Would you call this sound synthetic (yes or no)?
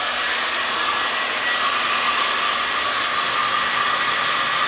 no